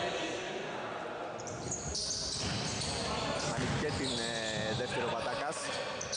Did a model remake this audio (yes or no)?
no